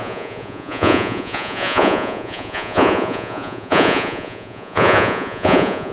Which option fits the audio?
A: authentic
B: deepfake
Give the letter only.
B